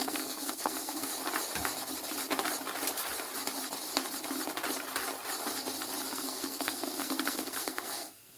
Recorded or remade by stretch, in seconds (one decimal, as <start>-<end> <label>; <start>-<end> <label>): 0.0-1.1 remade; 1.1-6.1 recorded; 6.1-8.4 remade